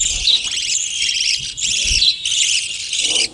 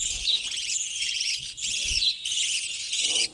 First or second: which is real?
first